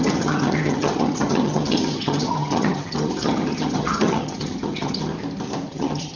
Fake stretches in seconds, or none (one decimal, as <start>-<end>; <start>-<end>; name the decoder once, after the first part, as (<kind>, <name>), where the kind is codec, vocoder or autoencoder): 0.0-5.1 (vocoder, HiFi-GAN); 5.7-6.2